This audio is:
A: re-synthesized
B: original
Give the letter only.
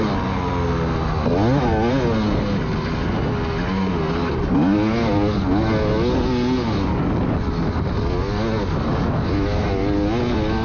B